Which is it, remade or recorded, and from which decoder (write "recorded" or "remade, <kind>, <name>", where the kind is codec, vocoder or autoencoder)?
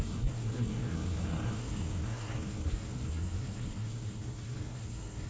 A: remade, codec, SNAC